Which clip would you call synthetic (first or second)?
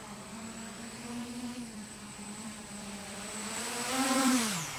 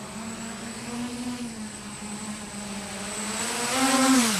first